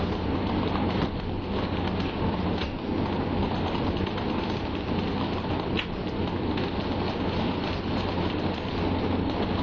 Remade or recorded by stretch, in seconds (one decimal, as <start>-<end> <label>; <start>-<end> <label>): 0.0-9.6 recorded